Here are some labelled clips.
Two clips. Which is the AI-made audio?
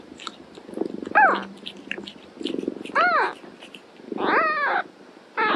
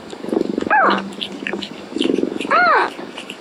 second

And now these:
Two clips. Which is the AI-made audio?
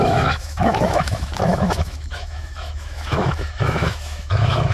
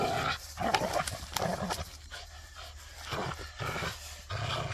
first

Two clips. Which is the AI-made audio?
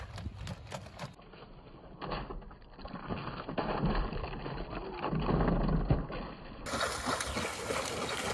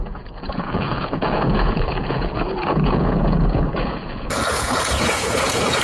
second